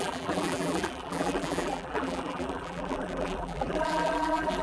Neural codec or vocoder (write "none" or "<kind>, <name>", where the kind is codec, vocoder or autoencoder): vocoder, BigVGAN v2